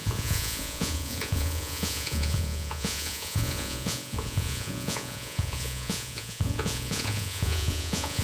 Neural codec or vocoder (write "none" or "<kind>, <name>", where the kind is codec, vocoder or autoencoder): vocoder, Vocos